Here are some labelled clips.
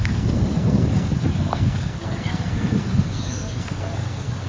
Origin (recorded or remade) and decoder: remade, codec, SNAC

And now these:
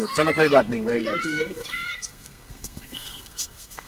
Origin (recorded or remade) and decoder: remade, codec, SNAC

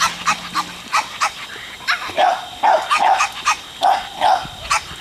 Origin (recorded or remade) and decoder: recorded